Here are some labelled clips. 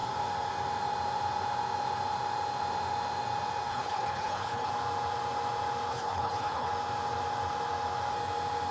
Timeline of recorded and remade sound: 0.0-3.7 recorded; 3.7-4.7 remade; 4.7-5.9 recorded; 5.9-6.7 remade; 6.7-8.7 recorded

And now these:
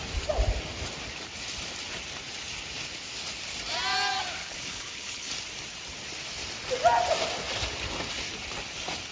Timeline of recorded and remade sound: 0.0-4.4 recorded; 4.4-5.3 remade; 5.3-9.1 recorded

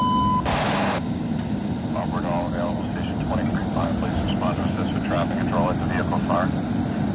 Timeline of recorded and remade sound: 0.0-7.1 recorded

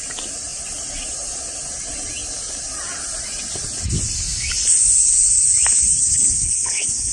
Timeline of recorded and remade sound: 0.0-6.0 recorded; 6.0-7.1 remade

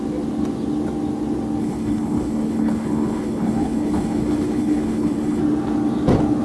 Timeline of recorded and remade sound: 0.0-1.6 recorded; 1.6-5.4 remade; 5.4-6.4 recorded